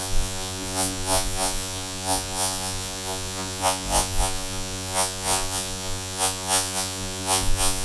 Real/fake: fake